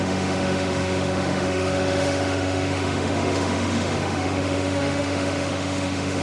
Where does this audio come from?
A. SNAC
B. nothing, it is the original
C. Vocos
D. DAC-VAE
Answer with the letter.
D